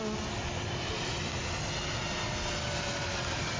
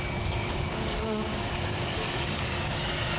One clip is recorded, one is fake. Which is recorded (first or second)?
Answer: first